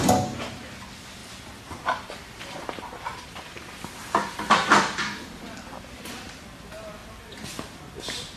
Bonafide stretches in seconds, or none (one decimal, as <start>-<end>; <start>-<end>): 0.0-1.2; 6.1-7.0; 7.8-8.4